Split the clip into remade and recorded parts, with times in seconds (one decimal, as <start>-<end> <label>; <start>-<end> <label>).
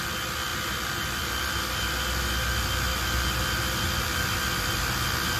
0.0-5.4 recorded